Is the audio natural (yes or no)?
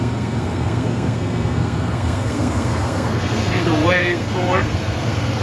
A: no